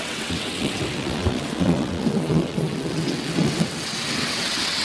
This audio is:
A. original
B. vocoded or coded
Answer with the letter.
B